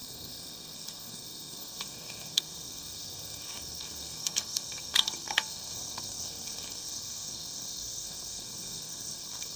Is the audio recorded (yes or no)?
no